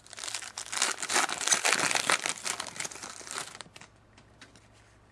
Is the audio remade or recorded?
recorded